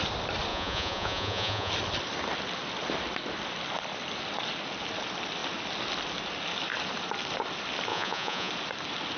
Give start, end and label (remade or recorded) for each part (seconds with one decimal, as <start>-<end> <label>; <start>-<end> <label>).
0.0-0.5 recorded; 0.5-1.7 remade; 1.7-7.9 recorded; 7.9-8.5 remade; 8.5-9.2 recorded